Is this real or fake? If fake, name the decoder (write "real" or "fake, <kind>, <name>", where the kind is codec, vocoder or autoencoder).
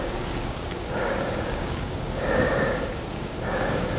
fake, codec, DAC